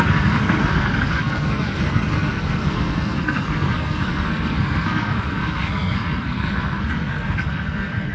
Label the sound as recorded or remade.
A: remade